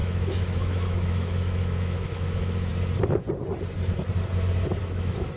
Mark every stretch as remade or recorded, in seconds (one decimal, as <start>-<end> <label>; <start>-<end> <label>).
0.0-2.7 remade; 2.7-4.8 recorded; 4.8-5.4 remade